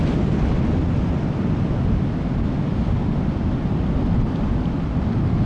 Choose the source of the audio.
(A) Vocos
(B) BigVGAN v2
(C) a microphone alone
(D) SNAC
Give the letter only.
C